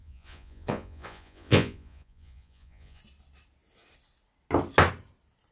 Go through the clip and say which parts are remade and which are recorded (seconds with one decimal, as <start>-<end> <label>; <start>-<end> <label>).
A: 0.0-3.0 remade; 3.0-5.5 recorded